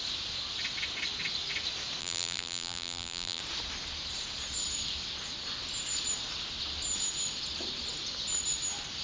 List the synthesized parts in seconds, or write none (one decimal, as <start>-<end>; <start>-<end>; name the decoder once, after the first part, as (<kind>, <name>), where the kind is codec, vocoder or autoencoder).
2.0-3.4 (vocoder, BigVGAN v2)